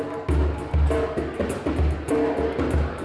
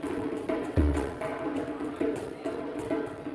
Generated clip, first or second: second